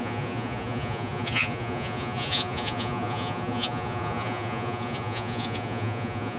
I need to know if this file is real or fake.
fake